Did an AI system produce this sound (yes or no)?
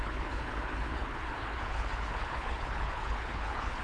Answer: yes